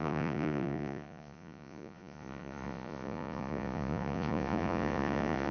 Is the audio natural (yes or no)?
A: no